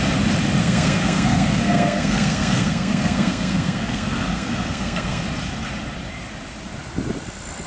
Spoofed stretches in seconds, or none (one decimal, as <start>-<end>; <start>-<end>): 0.6-5.2